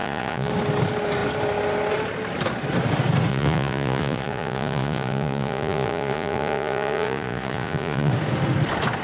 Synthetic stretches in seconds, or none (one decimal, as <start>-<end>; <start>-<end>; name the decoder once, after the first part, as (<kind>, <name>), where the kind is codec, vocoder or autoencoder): 0.0-0.5 (vocoder, Vocos); 3.3-8.1